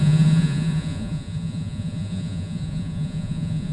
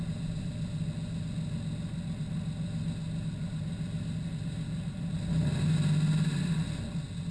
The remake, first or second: first